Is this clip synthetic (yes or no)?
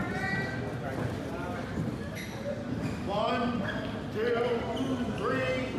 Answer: no